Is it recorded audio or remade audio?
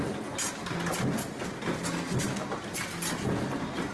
recorded